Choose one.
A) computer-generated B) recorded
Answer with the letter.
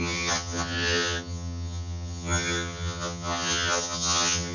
A